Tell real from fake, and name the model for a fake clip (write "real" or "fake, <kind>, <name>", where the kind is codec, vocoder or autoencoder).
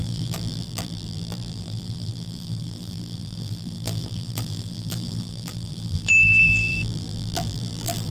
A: fake, vocoder, BigVGAN v2